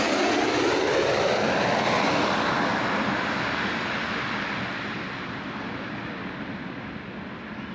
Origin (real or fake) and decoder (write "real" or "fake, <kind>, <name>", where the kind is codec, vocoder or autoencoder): real